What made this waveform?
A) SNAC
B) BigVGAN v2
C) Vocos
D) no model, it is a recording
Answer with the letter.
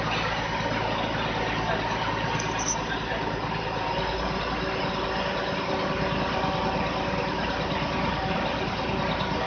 D